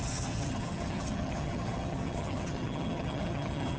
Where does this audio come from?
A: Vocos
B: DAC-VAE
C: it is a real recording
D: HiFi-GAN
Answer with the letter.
D